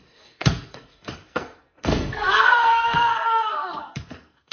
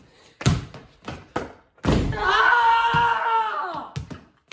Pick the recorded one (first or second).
second